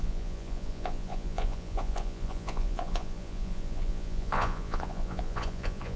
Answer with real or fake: fake